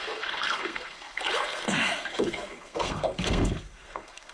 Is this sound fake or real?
fake